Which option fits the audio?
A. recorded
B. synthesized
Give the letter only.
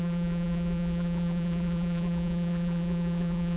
B